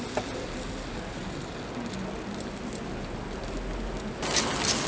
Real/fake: real